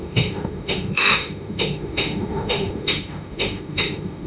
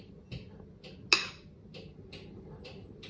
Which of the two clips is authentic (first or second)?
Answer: second